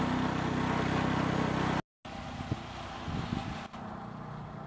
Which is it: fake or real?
real